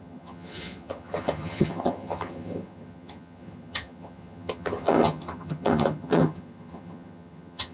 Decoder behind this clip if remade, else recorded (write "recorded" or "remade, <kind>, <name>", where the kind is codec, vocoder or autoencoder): remade, vocoder, HiFi-GAN